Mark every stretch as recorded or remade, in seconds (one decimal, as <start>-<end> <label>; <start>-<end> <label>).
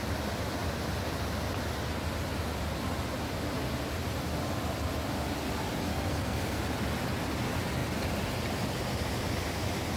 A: 0.0-5.9 recorded; 5.9-6.6 remade; 6.6-10.0 recorded